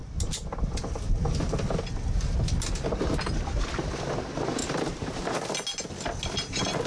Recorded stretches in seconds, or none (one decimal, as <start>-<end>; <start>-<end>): 0.0-6.9